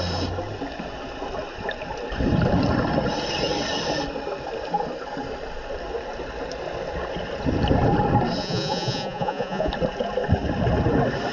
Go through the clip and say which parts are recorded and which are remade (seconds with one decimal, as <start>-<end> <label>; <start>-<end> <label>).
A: 0.0-8.4 recorded; 8.4-9.7 remade; 9.7-11.3 recorded